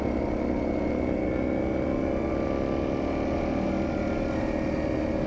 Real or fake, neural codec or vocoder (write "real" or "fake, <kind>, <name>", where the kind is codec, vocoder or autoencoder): real